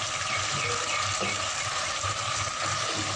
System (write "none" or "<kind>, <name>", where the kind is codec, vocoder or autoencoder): none